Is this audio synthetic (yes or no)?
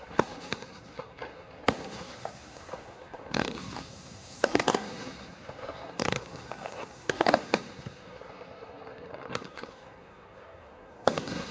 yes